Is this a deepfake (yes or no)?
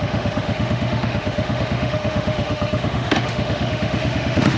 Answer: yes